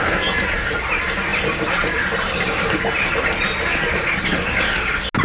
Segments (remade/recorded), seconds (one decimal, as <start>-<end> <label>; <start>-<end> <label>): 0.0-5.2 recorded